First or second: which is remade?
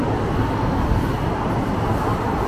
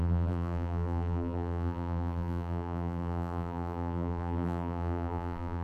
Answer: second